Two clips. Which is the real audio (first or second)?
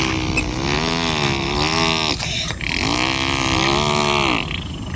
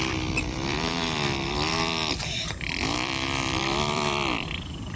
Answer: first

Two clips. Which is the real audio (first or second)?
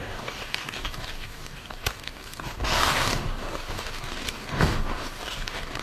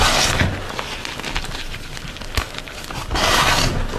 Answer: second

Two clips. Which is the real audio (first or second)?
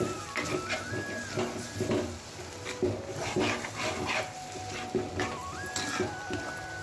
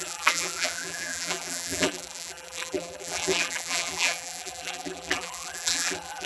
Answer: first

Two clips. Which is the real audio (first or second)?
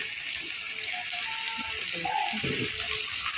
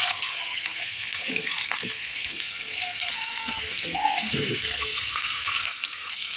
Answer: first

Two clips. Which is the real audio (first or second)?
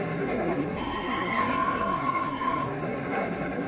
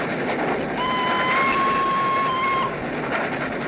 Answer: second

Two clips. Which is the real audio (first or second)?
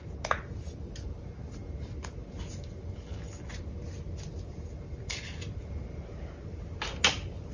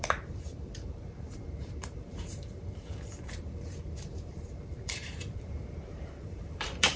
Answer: first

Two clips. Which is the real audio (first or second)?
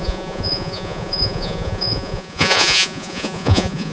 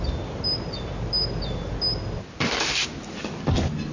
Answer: second